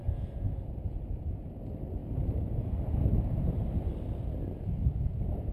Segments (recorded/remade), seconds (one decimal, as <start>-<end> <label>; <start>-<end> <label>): 0.0-1.3 remade; 1.3-2.0 recorded; 2.0-3.6 remade; 3.6-5.5 recorded

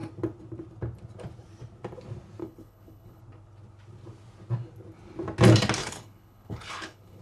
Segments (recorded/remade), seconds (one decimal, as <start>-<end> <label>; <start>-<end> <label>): 0.0-2.4 recorded; 2.4-3.2 remade; 3.2-5.8 recorded; 5.8-7.2 remade

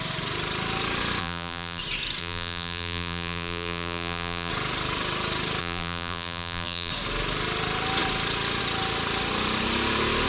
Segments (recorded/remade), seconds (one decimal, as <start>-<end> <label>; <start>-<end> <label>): 0.0-1.2 recorded; 1.2-1.8 remade; 1.8-2.2 recorded; 2.2-4.5 remade; 4.5-5.6 recorded; 5.6-6.9 remade; 6.9-10.3 recorded

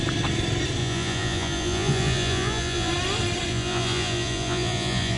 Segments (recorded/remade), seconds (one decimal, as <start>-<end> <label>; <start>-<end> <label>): 0.0-0.8 recorded; 0.8-2.9 remade; 2.9-3.5 recorded; 3.5-5.2 remade

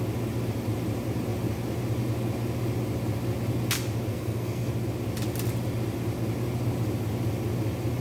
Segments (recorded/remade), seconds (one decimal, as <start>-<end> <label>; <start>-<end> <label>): 0.0-4.1 recorded; 4.1-4.7 remade; 4.7-8.0 recorded